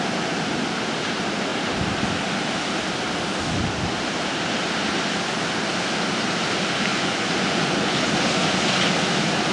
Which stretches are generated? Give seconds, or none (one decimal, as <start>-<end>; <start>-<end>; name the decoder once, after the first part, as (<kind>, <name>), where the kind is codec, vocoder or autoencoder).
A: 6.9-8.1 (vocoder, Vocos)